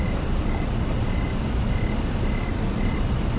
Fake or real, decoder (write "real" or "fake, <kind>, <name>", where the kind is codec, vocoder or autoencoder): real